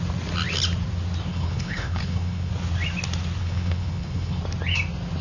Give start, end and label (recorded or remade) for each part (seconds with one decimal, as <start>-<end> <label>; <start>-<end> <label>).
0.0-1.3 recorded; 1.3-2.5 remade; 2.5-3.4 recorded; 3.4-4.4 remade; 4.4-5.2 recorded